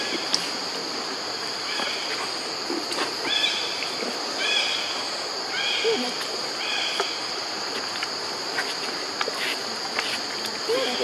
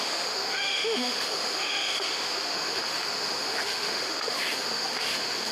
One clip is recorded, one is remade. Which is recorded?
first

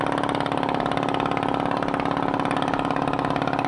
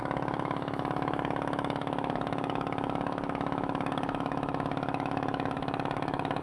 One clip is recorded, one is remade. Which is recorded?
first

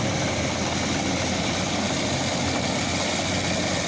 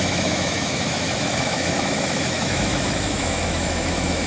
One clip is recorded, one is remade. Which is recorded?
first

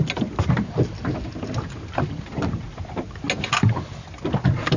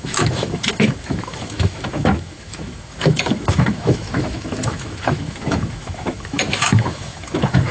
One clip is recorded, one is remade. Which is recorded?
first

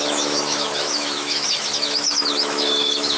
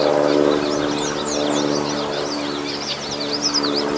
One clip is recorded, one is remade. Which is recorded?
second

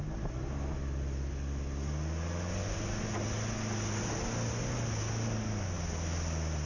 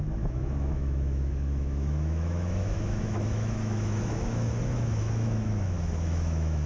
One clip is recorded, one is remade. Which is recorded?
first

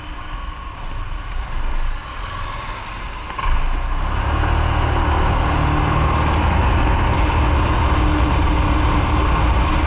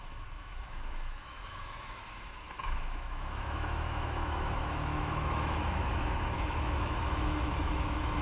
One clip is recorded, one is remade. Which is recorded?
first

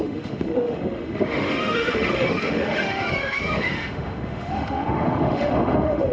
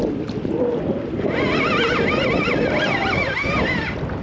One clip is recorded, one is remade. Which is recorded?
second